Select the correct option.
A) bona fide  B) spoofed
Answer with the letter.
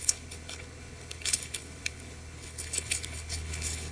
B